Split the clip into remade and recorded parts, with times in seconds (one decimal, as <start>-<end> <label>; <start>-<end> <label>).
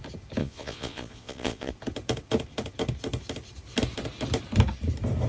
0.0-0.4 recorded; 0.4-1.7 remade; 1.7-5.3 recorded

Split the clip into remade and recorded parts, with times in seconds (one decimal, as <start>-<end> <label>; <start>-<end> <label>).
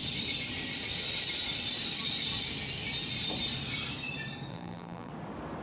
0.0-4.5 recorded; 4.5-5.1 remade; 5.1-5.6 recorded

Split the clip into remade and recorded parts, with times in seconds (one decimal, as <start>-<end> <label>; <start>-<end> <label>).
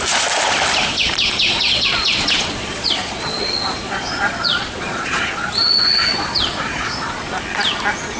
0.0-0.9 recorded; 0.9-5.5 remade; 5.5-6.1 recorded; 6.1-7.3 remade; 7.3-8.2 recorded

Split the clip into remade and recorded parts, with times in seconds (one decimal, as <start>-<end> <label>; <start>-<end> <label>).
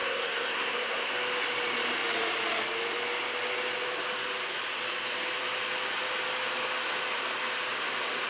0.0-1.1 remade; 1.1-8.3 recorded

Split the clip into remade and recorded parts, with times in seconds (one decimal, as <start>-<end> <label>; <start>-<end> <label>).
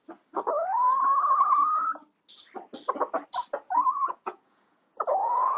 0.0-3.9 recorded; 3.9-5.6 remade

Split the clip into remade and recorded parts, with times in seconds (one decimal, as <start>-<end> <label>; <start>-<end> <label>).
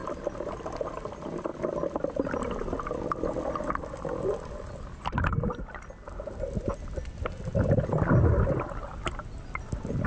0.0-0.5 remade; 0.5-10.1 recorded